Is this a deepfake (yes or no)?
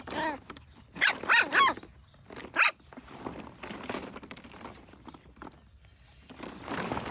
no